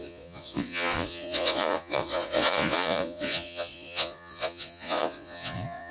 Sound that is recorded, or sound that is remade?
remade